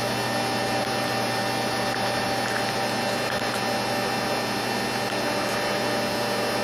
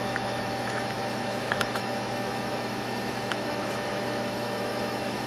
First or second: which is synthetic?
second